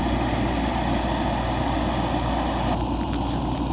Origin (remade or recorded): recorded